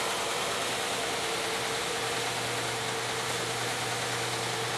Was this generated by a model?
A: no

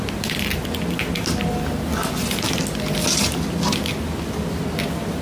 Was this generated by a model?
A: no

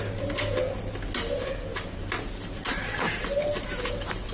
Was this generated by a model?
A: no